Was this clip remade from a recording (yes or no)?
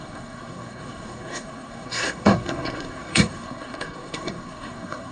yes